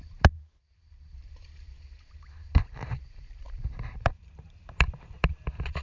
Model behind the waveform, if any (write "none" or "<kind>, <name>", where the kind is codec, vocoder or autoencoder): vocoder, BigVGAN v2